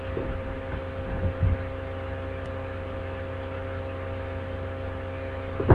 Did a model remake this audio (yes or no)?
no